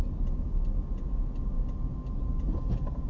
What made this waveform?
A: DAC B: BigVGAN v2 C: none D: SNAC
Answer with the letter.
C